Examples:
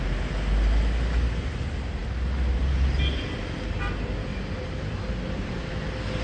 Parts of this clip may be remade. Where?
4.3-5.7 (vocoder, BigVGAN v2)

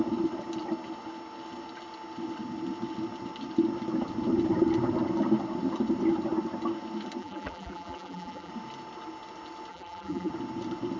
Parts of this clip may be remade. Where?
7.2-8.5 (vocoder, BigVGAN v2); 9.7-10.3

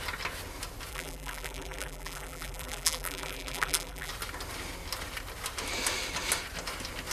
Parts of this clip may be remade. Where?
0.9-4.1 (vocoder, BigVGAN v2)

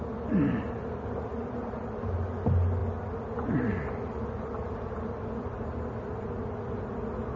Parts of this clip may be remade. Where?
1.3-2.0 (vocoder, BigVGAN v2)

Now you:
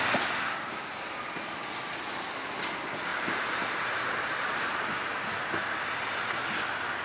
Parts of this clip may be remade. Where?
3.1-5.3 (vocoder, BigVGAN v2)

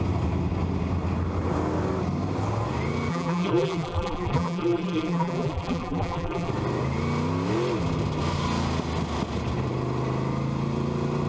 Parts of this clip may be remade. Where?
3.1-6.5 (vocoder, BigVGAN v2)